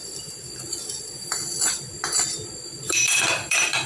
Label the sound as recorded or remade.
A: remade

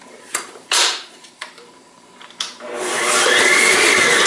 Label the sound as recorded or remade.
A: remade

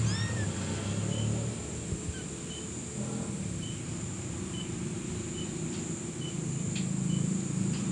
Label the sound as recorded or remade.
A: recorded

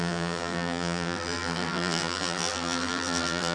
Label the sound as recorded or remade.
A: remade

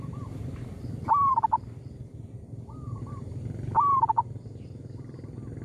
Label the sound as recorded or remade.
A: remade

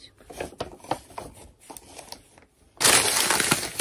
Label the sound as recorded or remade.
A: recorded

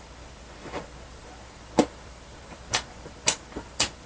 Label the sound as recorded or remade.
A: remade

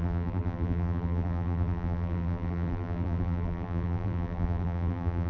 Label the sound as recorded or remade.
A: remade